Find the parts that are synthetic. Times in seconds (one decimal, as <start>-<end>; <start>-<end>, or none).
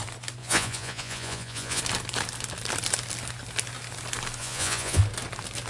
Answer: 0.4-1.8; 4.4-5.0